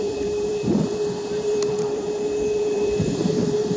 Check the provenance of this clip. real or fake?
fake